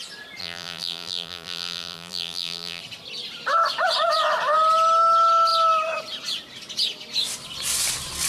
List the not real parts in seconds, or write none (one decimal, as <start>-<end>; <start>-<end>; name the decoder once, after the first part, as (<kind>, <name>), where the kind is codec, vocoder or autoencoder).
0.4-2.8 (vocoder, BigVGAN v2)

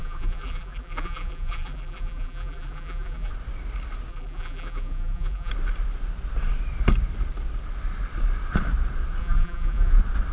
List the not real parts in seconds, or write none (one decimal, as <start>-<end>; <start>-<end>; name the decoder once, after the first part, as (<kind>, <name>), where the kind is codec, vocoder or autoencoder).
0.0-3.3 (vocoder, BigVGAN v2); 4.1-5.5; 9.2-9.9

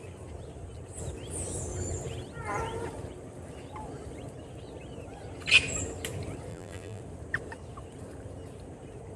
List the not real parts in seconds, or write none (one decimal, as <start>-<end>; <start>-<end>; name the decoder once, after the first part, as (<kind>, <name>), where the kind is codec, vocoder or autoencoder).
6.5-7.0 (vocoder, BigVGAN v2)